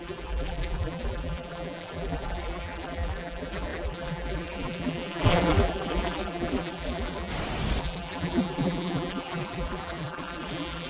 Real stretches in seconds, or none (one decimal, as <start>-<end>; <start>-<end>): 7.3-7.8